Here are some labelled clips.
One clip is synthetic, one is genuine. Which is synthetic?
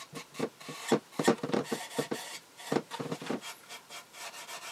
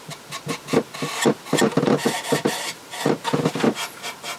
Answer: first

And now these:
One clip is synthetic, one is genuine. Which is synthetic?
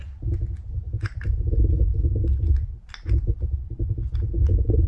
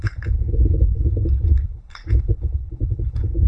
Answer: second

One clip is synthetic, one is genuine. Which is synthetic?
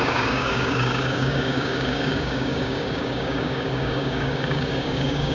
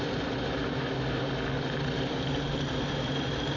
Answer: first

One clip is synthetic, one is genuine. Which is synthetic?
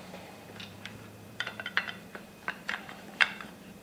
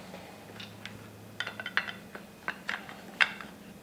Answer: first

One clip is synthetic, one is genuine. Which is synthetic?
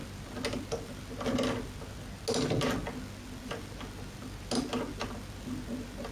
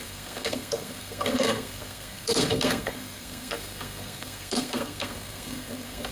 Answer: second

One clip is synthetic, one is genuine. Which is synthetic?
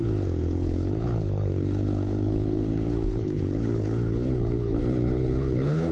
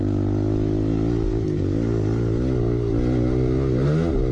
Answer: first